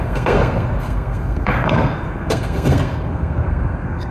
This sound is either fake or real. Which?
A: fake